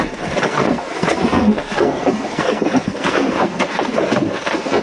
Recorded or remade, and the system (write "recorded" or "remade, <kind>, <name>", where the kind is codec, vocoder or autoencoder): remade, codec, SNAC